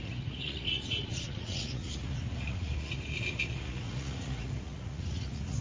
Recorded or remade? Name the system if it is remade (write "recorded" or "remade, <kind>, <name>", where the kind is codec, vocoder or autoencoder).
remade, vocoder, Vocos